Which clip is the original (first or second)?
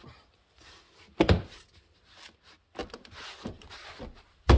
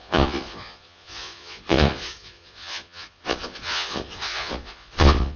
first